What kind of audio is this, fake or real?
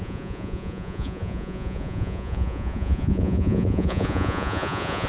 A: fake